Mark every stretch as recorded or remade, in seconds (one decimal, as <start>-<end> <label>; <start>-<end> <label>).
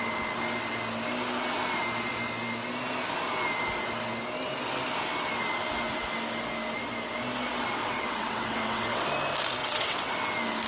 0.0-7.8 recorded; 7.8-9.1 remade; 9.1-9.6 recorded; 9.6-10.1 remade; 10.1-10.7 recorded